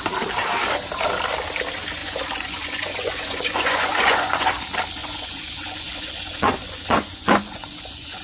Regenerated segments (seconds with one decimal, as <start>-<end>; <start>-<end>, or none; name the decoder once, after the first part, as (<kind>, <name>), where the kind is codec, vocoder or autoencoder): 2.0-4.5 (vocoder, Vocos); 5.0-8.2